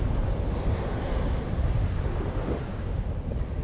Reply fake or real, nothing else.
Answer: real